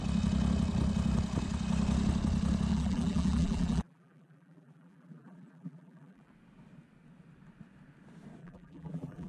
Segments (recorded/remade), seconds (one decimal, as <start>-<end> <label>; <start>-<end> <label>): 0.0-2.7 recorded; 2.7-6.3 remade; 6.3-8.4 recorded; 8.4-9.3 remade